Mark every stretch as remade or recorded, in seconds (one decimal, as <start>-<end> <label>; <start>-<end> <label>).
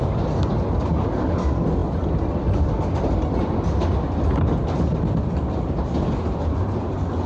0.0-7.3 recorded